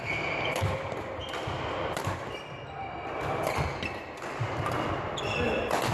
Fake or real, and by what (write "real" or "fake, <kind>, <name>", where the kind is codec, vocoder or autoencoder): real